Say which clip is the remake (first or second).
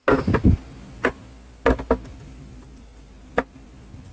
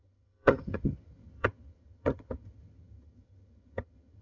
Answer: second